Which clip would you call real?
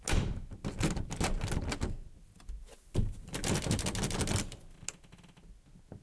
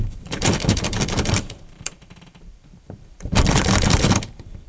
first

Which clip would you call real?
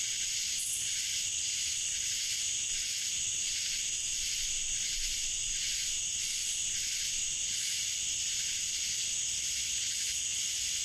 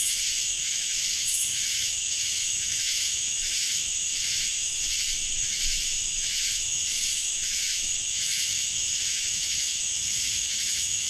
first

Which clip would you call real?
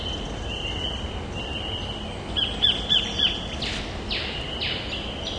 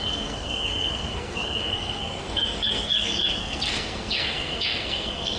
first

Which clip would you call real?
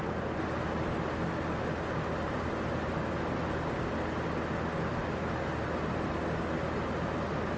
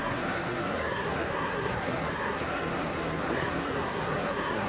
first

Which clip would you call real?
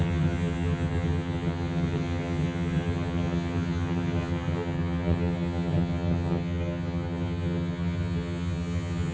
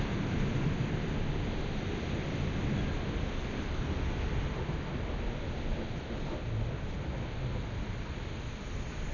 second